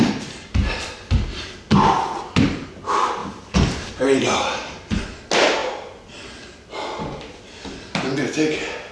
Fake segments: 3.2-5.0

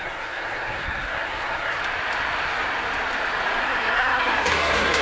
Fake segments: 0.0-1.8; 3.6-5.0

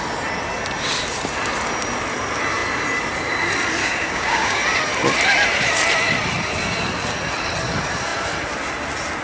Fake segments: 3.8-4.6

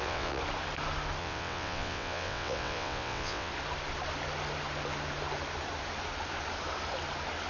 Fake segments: 0.0-0.4; 1.2-3.5

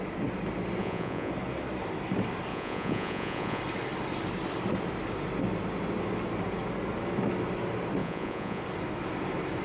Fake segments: 0.8-1.3; 2.5-3.6; 8.0-8.6

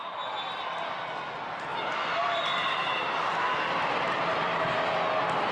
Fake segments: 1.7-5.0